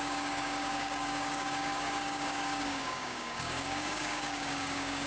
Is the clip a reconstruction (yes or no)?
yes